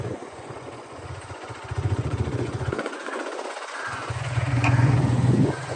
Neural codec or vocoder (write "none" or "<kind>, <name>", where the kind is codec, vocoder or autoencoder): vocoder, Vocos